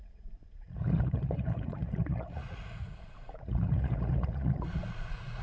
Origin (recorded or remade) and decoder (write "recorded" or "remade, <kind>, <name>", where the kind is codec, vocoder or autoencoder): remade, vocoder, Vocos